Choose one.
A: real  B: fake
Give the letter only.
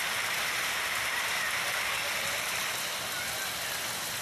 A